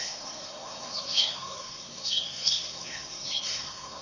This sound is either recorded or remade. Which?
remade